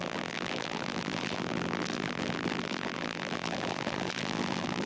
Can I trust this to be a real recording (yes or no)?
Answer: no